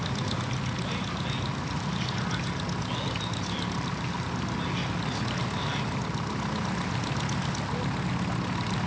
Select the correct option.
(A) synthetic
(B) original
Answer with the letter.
B